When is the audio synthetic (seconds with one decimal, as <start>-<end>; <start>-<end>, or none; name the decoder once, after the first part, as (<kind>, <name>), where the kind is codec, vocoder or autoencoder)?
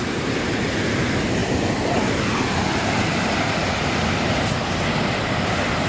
none